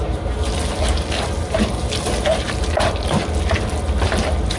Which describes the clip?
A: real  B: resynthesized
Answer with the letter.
A